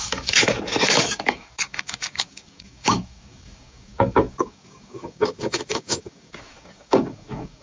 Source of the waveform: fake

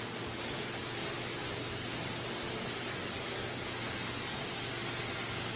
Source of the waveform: real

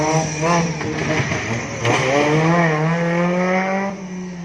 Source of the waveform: real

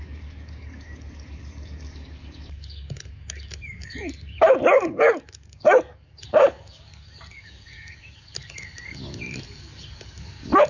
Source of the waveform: fake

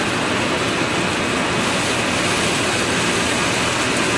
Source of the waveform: real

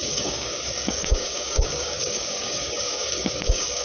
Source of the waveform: fake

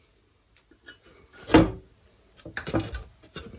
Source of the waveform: real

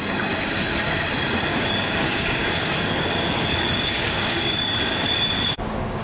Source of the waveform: fake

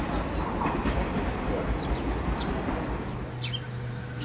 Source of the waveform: real